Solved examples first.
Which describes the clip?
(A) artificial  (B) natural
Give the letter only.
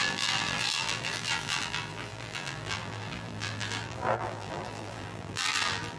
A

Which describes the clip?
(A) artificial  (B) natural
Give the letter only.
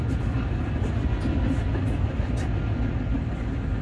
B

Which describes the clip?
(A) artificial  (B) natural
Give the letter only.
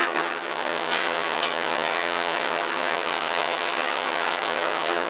A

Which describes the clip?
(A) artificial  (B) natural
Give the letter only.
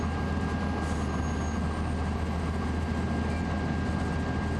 B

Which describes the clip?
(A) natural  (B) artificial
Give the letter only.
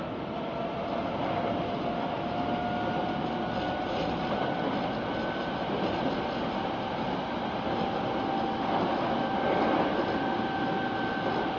A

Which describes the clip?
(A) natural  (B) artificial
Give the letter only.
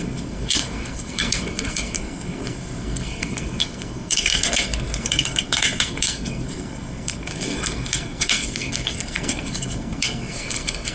B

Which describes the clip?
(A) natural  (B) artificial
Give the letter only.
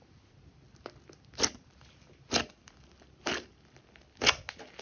A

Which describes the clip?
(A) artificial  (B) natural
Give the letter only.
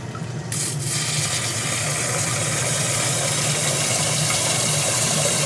B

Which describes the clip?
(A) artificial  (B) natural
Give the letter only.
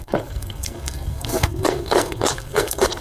A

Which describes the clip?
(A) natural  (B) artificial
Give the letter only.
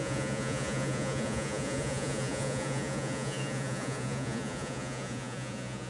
B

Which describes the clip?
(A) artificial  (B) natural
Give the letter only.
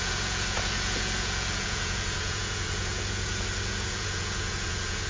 A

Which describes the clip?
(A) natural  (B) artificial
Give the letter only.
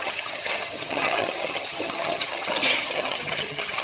B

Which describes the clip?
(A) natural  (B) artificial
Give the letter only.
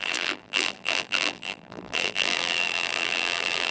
B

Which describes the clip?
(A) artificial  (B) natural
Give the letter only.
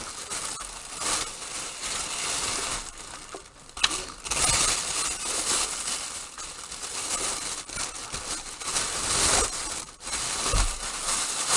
B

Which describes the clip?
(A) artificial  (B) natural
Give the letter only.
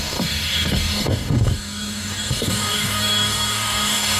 A